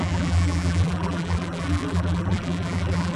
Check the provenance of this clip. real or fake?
fake